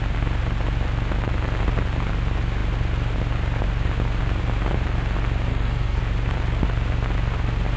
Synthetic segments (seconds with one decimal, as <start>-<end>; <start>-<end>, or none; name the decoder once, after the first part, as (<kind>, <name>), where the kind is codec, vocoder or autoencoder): 5.5-6.0 (codec, SNAC)